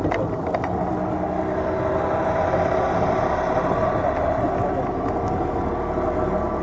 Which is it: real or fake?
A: real